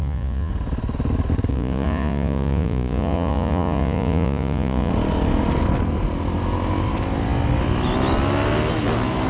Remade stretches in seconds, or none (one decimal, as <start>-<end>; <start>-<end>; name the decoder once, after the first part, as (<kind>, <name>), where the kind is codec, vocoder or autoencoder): 0.0-0.5 (vocoder, Vocos); 1.5-4.9